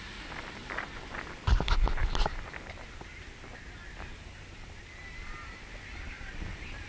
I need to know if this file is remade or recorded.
recorded